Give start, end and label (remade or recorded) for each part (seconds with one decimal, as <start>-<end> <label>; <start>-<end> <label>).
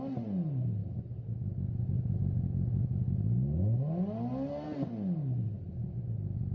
0.0-0.8 recorded; 0.8-1.8 remade; 1.8-6.5 recorded